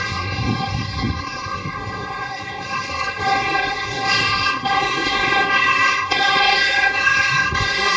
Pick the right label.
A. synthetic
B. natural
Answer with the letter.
A